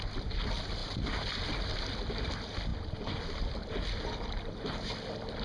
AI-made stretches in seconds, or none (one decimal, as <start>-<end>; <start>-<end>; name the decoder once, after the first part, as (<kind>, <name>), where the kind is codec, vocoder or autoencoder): none